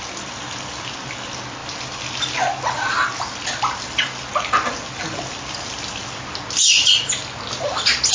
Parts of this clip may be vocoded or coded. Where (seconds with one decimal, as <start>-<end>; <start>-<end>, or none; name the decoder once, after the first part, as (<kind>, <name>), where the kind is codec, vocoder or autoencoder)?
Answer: none